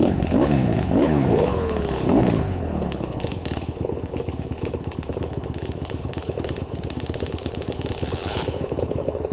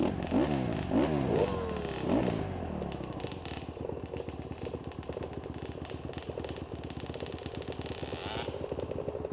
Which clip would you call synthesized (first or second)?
first